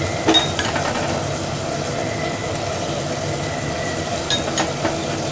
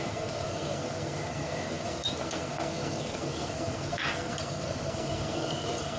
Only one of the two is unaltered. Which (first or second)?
first